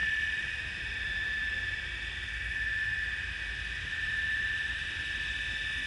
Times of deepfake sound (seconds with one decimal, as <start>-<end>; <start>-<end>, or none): none